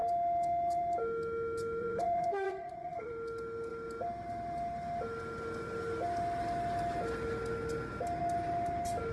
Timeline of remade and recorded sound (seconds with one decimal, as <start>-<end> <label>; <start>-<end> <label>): 0.0-1.8 recorded; 1.8-3.1 remade; 3.1-9.1 recorded